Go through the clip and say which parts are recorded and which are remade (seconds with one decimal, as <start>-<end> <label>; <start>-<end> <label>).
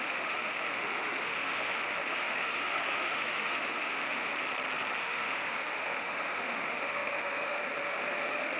0.0-4.3 remade; 4.3-5.0 recorded; 5.0-8.6 remade